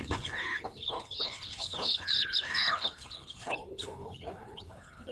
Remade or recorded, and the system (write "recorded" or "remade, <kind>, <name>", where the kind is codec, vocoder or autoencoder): remade, codec, HILCodec